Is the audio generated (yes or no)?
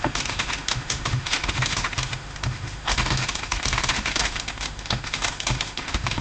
yes